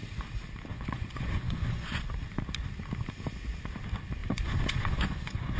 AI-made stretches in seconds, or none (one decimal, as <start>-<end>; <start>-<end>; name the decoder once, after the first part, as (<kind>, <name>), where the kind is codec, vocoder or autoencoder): 0.7-2.0 (vocoder, Vocos); 4.2-5.6